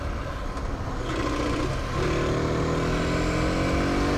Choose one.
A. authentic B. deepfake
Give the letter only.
A